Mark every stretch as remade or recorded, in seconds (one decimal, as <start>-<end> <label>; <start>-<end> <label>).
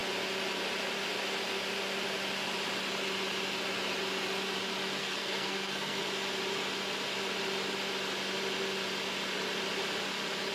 0.0-5.0 recorded; 5.0-6.0 remade; 6.0-10.5 recorded